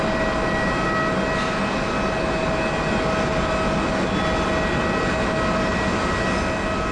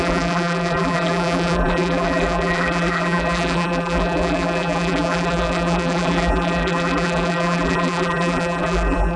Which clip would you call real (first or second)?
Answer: first